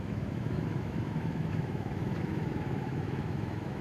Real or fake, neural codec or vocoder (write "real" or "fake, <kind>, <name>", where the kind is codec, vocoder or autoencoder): fake, autoencoder, DAC-VAE